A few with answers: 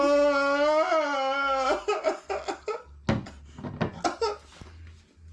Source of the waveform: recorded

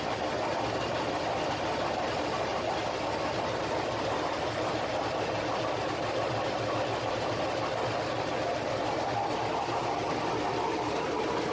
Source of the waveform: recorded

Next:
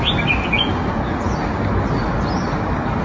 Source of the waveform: recorded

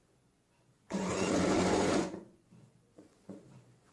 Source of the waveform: remade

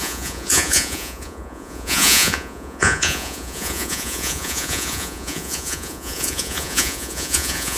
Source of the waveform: remade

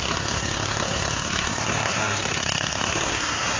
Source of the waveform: remade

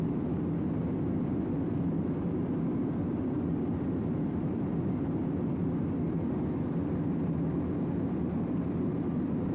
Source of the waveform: recorded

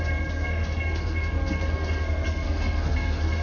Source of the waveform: remade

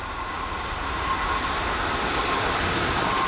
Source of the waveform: recorded